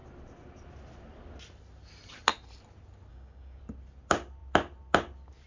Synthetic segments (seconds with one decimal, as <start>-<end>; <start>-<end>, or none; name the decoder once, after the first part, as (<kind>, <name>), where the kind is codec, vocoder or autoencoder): 3.1-3.6 (codec, DAC)